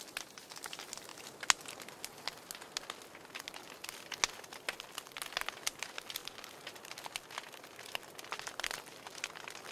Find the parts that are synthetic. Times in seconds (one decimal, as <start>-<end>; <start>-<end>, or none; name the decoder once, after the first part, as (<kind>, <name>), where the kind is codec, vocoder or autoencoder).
none